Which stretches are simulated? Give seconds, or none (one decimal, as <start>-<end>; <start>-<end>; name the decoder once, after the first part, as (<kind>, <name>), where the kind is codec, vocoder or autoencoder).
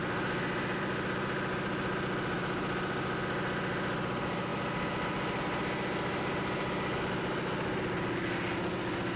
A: none